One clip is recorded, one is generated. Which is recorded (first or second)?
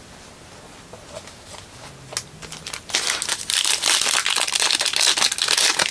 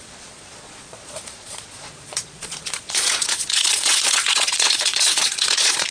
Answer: first